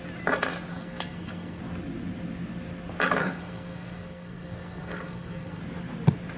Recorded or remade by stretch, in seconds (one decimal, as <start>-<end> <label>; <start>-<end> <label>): 0.0-0.7 recorded; 0.7-1.6 remade; 1.6-3.2 recorded; 3.2-5.6 remade; 5.6-6.4 recorded